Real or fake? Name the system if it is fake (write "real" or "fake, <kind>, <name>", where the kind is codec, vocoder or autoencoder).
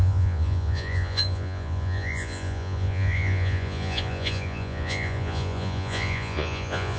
fake, vocoder, Vocos